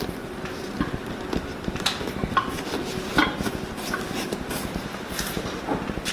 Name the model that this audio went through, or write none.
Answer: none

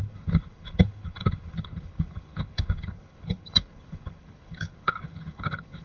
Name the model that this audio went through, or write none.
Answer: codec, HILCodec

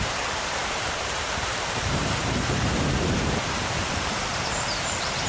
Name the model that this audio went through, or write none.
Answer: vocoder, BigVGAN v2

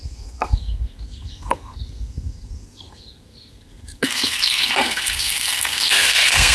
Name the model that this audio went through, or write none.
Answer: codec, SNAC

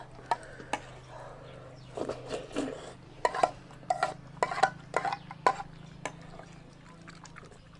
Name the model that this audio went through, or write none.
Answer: none